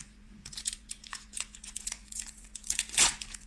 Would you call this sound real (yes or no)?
no